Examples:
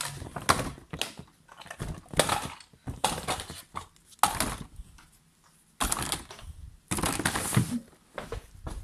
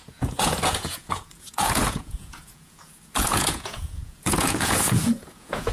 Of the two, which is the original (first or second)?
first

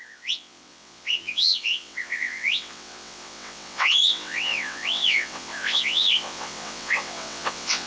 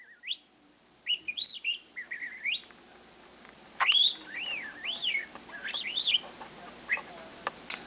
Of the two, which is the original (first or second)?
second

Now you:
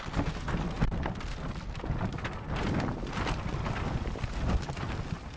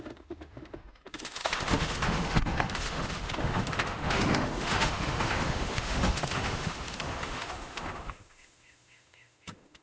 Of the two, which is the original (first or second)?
first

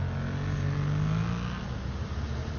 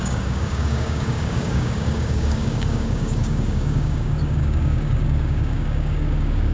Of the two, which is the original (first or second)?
first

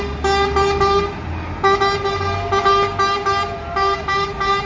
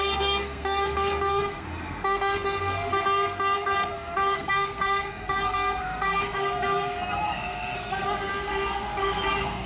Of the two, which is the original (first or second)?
first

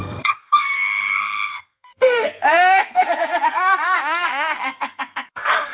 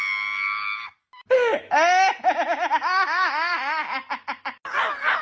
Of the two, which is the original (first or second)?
second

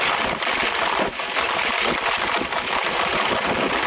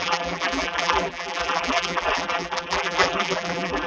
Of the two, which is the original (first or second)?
first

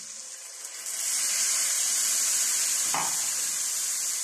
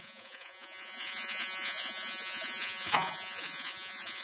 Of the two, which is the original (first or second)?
first